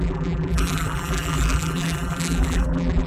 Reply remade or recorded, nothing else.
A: remade